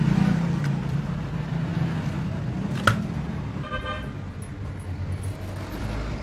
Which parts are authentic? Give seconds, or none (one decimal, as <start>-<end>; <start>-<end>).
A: 0.0-6.2

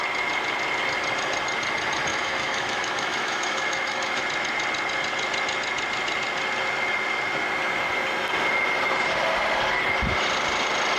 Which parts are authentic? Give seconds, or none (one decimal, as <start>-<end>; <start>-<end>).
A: 0.0-2.1; 4.2-11.0

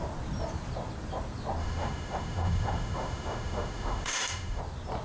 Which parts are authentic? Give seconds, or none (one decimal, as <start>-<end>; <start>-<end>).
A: 0.0-1.6; 4.6-5.0

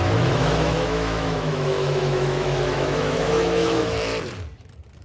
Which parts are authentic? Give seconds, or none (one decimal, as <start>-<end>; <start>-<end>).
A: 4.1-5.0

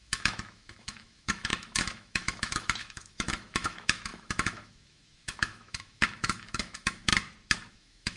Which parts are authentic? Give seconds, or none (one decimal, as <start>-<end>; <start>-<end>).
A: 7.1-7.7